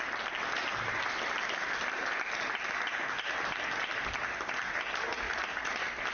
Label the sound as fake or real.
real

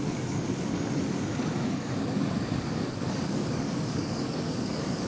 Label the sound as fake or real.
fake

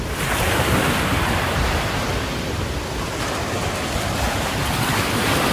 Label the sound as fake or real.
fake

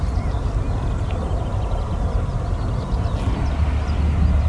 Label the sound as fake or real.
real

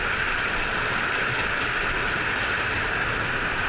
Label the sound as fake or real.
real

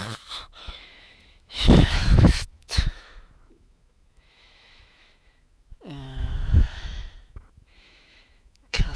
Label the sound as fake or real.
fake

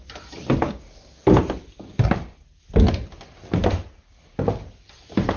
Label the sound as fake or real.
real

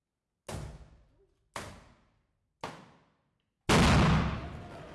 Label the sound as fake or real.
real